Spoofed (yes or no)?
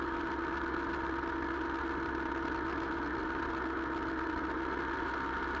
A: no